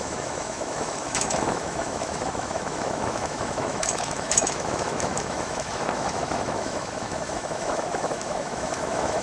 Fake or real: fake